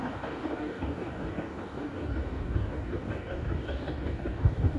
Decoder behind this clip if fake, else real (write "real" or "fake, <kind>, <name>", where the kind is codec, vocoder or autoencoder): fake, codec, DAC